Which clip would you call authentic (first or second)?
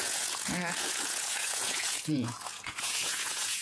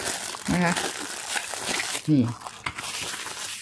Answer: second